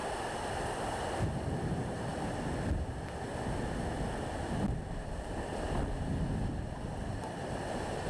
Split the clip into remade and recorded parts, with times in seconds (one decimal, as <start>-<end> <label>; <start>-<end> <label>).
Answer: 0.0-2.1 remade; 2.1-5.5 recorded; 5.5-8.1 remade